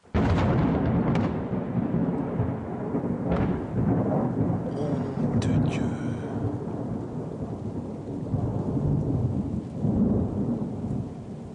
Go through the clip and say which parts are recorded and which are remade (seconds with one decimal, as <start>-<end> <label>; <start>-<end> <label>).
0.0-11.5 recorded